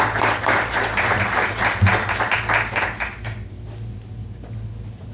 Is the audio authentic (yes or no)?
yes